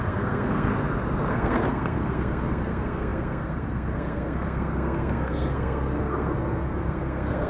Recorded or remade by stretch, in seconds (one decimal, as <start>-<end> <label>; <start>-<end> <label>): 0.0-0.7 remade; 0.7-1.3 recorded; 1.3-7.5 remade